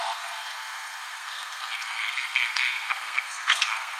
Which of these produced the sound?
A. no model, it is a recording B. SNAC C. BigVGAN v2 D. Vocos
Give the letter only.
B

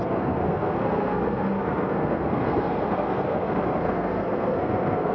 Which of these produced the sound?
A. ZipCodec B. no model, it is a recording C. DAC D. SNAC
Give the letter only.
D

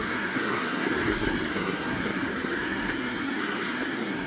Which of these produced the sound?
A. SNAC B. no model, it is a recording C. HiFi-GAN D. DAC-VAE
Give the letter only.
A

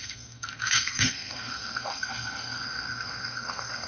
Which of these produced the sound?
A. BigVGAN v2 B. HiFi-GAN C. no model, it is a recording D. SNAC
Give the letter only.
D